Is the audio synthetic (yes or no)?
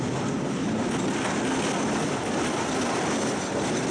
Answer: no